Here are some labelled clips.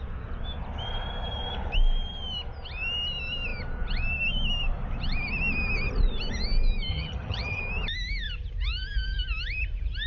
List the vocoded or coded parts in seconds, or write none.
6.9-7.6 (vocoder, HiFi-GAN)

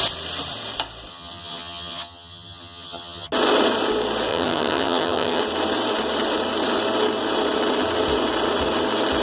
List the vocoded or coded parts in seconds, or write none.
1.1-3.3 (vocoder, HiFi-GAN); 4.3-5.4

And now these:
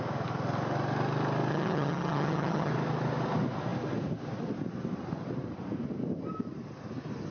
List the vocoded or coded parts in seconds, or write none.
1.5-2.7 (vocoder, HiFi-GAN)

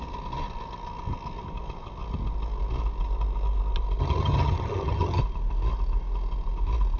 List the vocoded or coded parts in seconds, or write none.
4.0-5.2 (vocoder, HiFi-GAN)

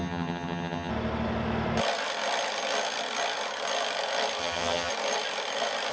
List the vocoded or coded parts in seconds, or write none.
0.0-0.9 (vocoder, HiFi-GAN); 4.4-4.9